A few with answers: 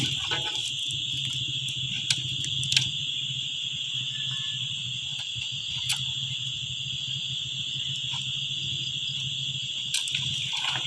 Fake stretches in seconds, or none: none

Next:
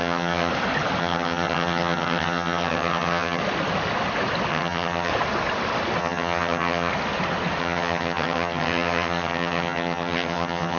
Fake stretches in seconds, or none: 0.0-0.5 (vocoder, HiFi-GAN); 1.0-3.4; 4.5-5.1; 6.0-6.9; 7.6-10.8

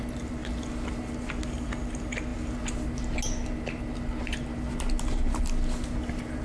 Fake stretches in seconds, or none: none

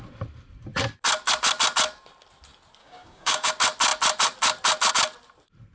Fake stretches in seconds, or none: 2.8-3.5 (codec, DAC)

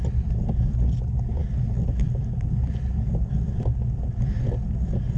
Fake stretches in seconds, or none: none

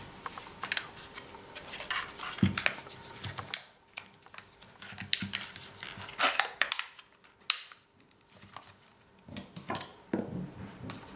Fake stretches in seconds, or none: none